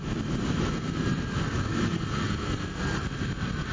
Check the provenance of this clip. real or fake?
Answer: real